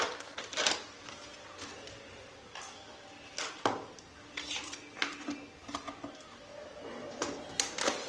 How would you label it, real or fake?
real